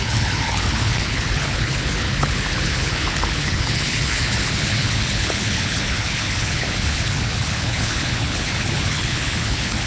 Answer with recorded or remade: remade